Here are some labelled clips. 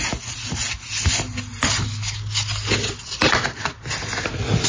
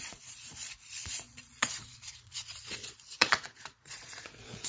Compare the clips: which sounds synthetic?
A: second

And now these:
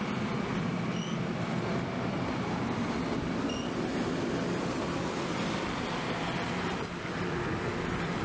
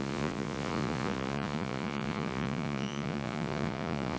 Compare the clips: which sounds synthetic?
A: second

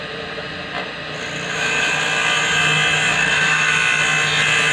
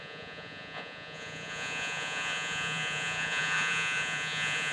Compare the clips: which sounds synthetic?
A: second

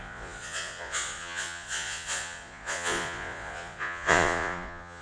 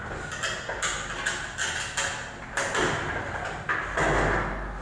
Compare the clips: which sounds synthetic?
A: first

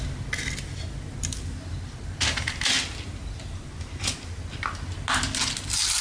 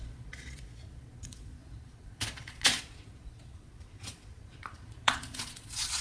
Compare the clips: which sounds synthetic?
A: second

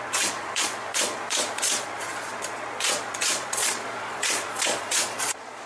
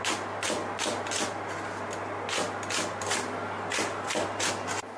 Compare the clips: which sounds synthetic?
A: first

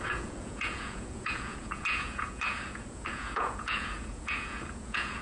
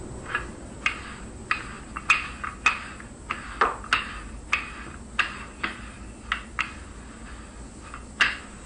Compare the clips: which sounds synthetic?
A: first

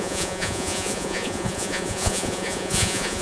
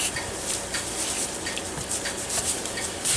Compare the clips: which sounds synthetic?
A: first